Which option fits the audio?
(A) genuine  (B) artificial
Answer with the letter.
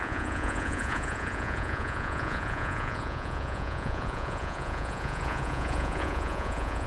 B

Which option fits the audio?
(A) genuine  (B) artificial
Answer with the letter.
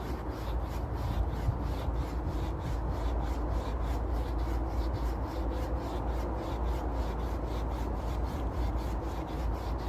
A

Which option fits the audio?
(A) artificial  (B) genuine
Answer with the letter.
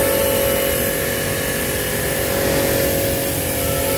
B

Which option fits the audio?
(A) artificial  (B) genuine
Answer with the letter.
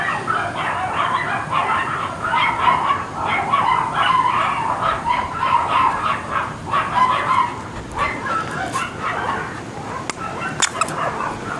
B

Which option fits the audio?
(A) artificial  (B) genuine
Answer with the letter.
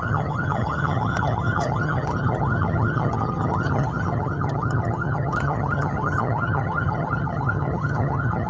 A